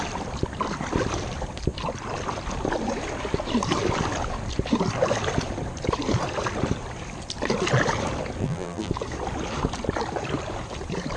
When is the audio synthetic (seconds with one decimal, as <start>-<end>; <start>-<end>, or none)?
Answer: 8.4-8.9